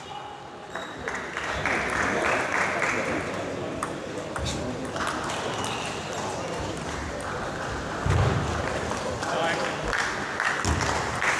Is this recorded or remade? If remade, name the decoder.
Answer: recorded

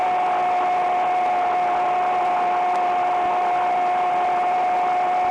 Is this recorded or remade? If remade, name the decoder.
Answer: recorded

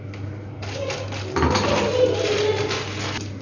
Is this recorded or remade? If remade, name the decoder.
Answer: recorded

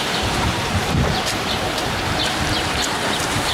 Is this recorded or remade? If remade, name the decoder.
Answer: remade, vocoder, BigVGAN v2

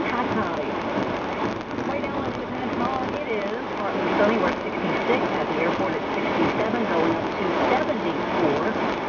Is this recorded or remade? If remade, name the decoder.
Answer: recorded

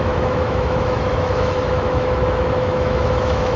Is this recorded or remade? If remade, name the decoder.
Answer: remade, autoencoder, DAC-VAE